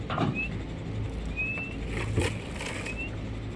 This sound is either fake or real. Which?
real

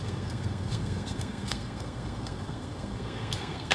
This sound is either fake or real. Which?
fake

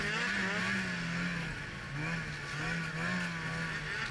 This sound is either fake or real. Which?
real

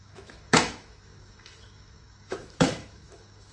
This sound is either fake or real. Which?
fake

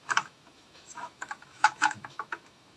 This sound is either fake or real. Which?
fake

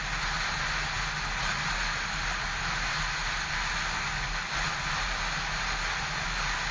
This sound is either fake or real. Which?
real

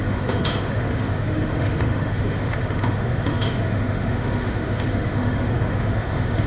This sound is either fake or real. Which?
fake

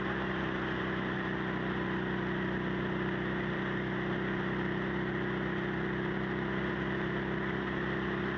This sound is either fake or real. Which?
real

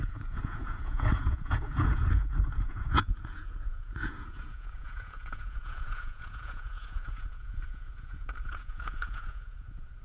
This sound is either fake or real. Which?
fake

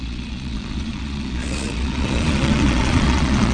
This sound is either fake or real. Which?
fake